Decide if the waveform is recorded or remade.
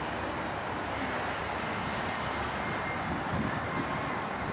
recorded